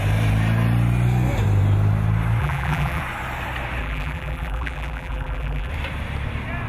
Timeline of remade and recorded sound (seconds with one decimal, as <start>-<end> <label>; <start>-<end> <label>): 0.0-2.4 recorded; 2.4-3.0 remade; 3.0-3.8 recorded; 3.8-5.7 remade; 5.7-6.7 recorded